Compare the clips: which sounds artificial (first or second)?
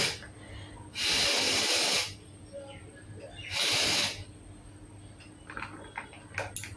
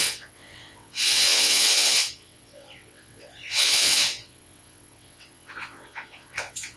second